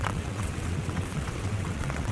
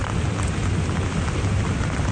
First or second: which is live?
second